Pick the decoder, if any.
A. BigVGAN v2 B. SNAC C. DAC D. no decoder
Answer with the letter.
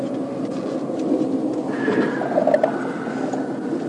D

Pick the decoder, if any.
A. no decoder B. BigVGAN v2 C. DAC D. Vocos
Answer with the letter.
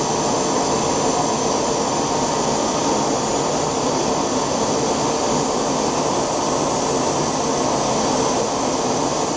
A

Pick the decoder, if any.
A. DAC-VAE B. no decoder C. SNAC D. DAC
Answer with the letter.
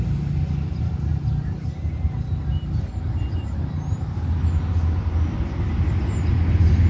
B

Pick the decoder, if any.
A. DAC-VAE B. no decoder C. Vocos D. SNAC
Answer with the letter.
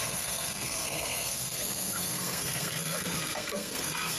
D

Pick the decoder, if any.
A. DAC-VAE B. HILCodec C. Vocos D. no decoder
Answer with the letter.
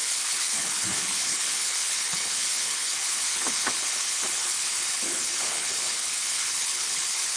B